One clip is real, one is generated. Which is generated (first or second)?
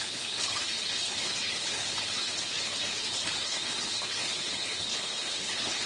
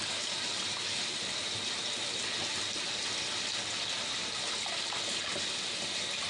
first